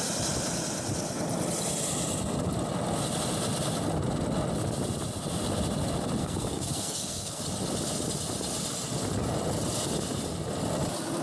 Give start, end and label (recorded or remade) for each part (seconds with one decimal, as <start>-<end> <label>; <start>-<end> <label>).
0.0-6.2 recorded; 6.2-7.4 remade; 7.4-11.2 recorded